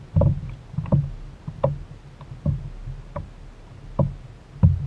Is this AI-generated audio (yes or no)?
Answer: no